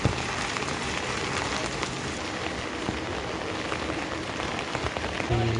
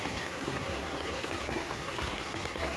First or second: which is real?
first